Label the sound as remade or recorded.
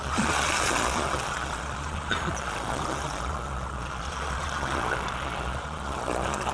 remade